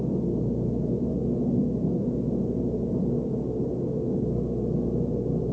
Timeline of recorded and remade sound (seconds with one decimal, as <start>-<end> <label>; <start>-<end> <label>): 0.0-5.5 recorded